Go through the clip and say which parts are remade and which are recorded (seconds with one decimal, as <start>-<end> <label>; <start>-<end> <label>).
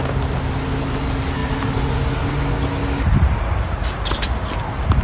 0.0-5.0 recorded